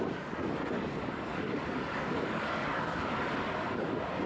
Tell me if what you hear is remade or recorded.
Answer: remade